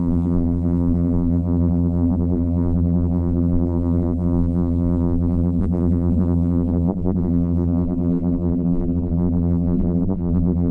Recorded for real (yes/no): no